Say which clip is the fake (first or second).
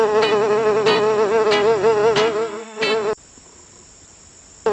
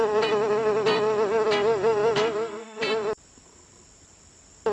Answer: second